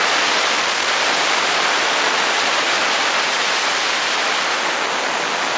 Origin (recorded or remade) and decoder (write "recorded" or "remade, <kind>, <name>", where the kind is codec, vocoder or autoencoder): recorded